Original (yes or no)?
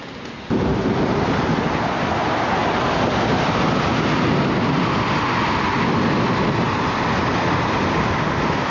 yes